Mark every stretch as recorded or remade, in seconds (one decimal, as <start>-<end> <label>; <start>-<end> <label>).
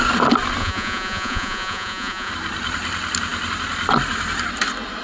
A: 0.0-0.6 recorded; 0.6-2.3 remade; 2.3-5.0 recorded